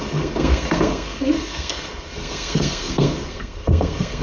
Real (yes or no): no